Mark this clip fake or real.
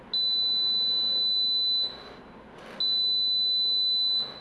real